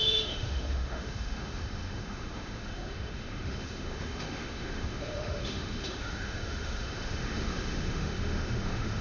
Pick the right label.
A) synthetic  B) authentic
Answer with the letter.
A